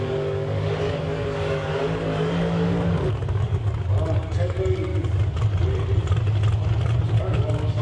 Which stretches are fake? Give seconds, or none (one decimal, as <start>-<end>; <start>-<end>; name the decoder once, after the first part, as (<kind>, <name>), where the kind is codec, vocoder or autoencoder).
0.0-4.9 (codec, DAC); 7.2-7.8